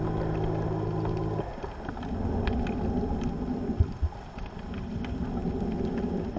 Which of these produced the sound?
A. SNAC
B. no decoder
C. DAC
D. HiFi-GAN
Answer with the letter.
B